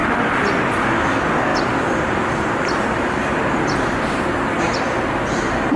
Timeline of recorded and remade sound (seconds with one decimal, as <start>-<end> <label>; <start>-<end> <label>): 0.0-0.5 remade; 0.5-1.5 recorded; 1.5-4.6 remade; 4.6-5.8 recorded